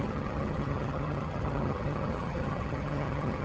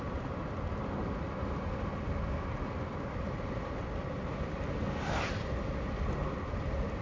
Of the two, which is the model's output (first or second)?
first